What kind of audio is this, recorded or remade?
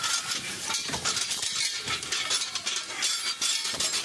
recorded